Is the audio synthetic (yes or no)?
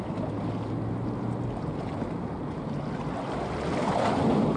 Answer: no